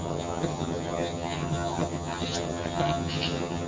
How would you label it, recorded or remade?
remade